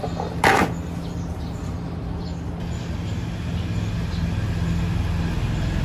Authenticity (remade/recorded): recorded